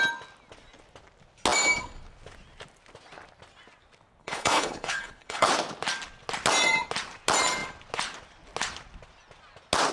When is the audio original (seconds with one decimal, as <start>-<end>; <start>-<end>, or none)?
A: 0.0-4.2; 5.5-9.9